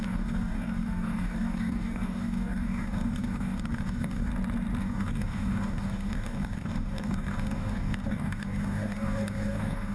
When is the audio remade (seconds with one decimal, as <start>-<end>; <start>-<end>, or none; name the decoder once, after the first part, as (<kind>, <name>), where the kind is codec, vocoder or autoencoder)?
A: 0.0-4.3 (codec, DAC); 4.8-9.9